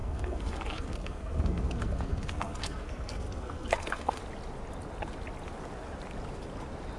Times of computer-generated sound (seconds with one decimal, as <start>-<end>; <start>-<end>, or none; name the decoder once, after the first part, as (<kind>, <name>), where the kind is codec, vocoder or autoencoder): 0.0-4.2 (codec, SNAC)